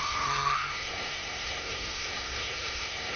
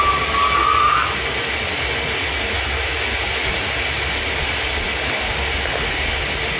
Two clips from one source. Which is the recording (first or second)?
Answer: second